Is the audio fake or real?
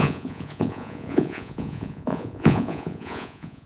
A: fake